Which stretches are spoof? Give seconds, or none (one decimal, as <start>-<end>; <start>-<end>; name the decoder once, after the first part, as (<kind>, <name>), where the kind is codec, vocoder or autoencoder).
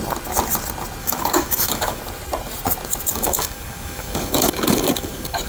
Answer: 1.0-2.0 (codec, DAC); 3.1-5.5